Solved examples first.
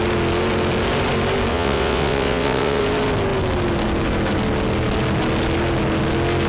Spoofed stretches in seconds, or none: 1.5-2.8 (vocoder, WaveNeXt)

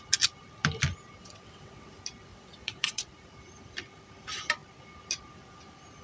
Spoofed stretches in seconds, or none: 1.2-1.9 (vocoder, WaveNeXt); 2.3-3.1

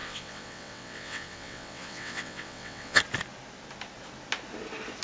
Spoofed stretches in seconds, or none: 0.0-3.0 (vocoder, WaveNeXt)

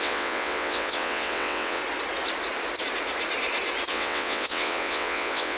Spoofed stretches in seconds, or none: 0.0-1.8 (vocoder, WaveNeXt); 3.9-5.6